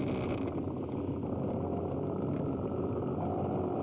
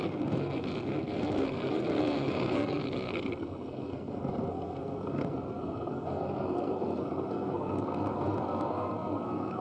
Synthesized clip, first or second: second